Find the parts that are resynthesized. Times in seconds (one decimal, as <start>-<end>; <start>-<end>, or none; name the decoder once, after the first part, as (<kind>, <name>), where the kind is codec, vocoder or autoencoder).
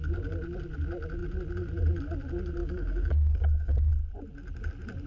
2.6-3.9 (codec, DAC)